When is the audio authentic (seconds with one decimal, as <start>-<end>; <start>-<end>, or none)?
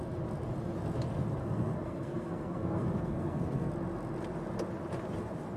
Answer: 0.0-1.4; 3.7-5.6